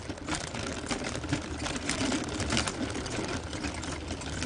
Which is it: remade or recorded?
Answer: recorded